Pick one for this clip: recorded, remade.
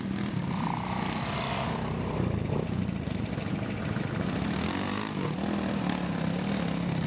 recorded